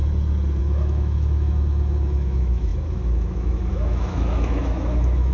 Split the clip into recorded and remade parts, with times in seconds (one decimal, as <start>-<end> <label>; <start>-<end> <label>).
0.0-0.6 recorded; 0.6-5.3 remade